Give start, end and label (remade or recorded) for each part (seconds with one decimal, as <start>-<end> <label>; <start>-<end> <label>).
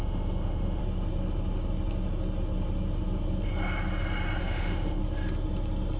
0.0-0.8 remade; 0.8-4.4 recorded; 4.4-5.0 remade; 5.0-6.0 recorded